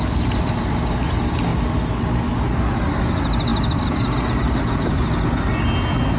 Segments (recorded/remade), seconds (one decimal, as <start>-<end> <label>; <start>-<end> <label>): 0.0-6.2 recorded

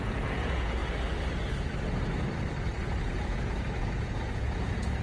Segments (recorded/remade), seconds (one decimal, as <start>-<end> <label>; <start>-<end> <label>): 0.0-0.8 remade; 0.8-2.8 recorded; 2.8-5.0 remade